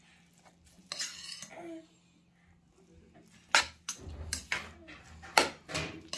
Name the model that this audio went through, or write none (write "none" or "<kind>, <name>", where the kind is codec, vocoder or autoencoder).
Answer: none